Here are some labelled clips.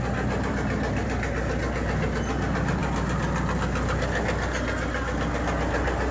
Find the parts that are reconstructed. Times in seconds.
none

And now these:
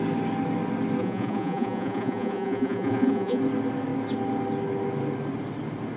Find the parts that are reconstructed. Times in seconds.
1.0-3.4 (vocoder, Vocos)

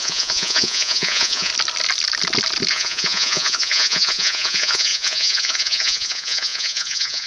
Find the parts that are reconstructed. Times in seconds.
0.0-1.5 (vocoder, Vocos); 2.7-7.3

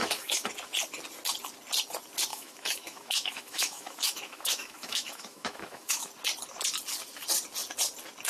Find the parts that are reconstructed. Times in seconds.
0.0-0.5 (autoencoder, DAC-VAE); 2.3-6.1